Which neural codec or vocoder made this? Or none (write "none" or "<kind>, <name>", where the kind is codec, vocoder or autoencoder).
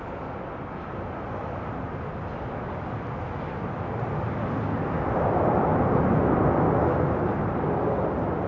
none